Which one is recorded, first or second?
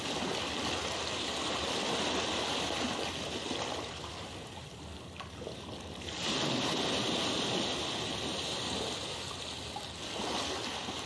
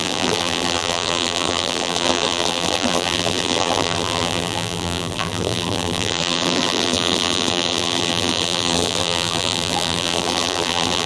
first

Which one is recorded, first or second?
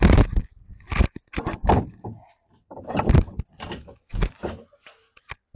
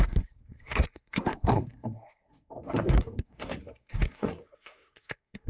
first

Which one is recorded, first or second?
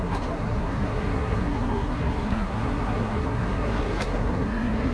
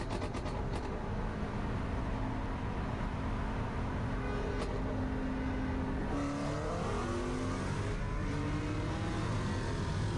second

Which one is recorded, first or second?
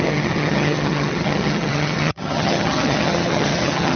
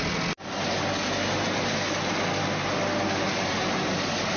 second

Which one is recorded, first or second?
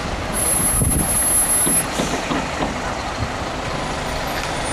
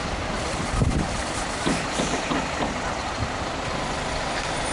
first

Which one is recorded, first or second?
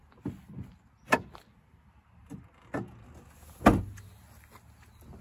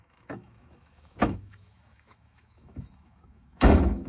first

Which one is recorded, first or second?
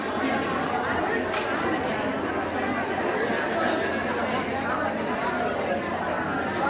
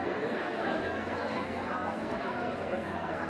first